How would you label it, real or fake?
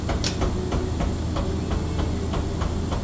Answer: real